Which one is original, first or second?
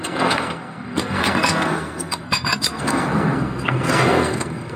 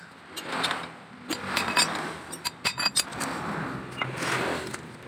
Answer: second